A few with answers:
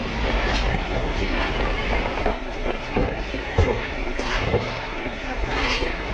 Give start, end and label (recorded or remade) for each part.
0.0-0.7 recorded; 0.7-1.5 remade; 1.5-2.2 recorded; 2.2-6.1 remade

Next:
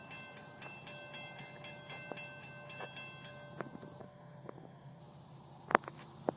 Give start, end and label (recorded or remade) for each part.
0.0-4.0 recorded; 4.0-5.0 remade; 5.0-6.4 recorded